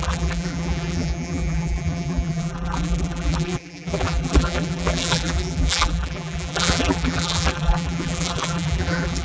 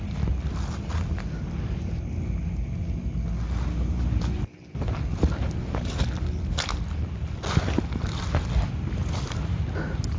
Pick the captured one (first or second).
second